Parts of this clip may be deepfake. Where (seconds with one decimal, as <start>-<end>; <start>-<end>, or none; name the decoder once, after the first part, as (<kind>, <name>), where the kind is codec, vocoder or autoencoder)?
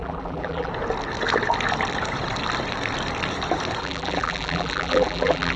0.0-0.7 (vocoder, BigVGAN v2); 3.8-5.6